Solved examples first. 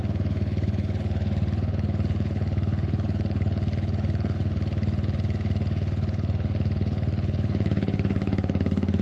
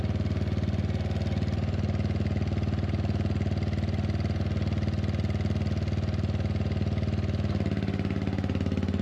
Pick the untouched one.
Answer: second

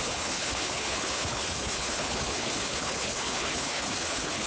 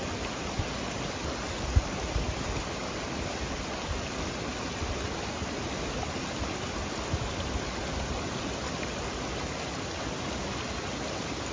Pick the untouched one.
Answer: second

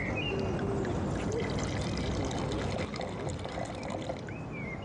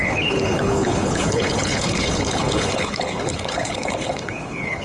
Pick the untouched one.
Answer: first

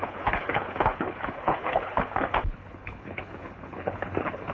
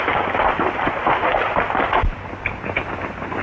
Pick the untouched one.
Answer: second